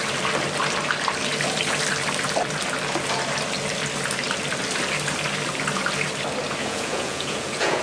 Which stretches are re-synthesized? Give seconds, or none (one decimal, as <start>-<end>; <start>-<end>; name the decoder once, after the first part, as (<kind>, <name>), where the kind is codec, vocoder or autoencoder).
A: 6.6-7.8 (vocoder, Vocos)

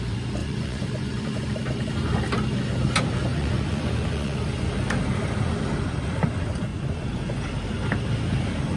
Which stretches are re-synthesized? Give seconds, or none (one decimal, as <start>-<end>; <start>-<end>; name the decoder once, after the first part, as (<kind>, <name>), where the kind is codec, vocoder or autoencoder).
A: 0.4-1.6 (vocoder, Vocos); 3.3-4.7; 6.7-7.4

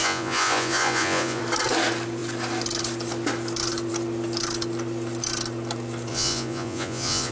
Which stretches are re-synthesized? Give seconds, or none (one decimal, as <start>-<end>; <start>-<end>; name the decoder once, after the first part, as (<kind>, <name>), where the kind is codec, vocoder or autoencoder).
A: 0.0-1.4 (vocoder, Vocos); 6.1-7.3